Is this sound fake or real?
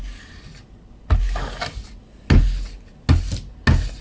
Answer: real